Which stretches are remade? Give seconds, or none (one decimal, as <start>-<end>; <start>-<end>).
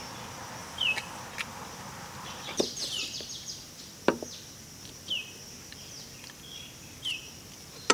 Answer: 0.6-1.2